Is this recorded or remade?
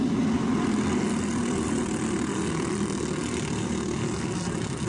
recorded